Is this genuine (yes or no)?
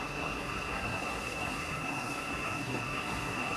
no